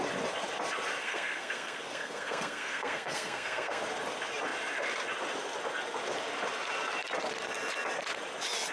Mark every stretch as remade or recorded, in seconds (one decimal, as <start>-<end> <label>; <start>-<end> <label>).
0.0-1.0 recorded; 1.0-3.8 remade; 3.8-8.7 recorded

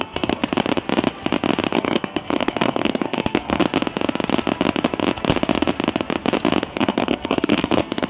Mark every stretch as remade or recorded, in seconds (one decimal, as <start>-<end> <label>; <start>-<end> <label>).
0.0-0.4 remade; 0.4-1.7 recorded; 1.7-3.6 remade; 3.6-6.6 recorded; 6.6-8.1 remade

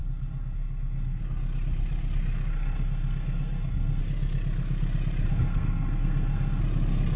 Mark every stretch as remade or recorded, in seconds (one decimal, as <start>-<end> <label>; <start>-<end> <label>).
0.0-1.2 remade; 1.2-2.5 recorded; 2.5-4.0 remade; 4.0-5.3 recorded; 5.3-6.6 remade; 6.6-7.2 recorded

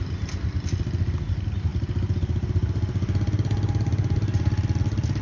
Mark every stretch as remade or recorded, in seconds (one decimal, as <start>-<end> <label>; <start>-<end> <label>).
0.0-5.2 recorded

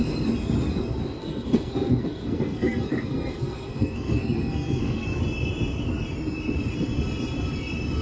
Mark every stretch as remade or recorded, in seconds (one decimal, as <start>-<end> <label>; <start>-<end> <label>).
0.0-1.2 recorded; 1.2-5.2 remade; 5.2-8.0 recorded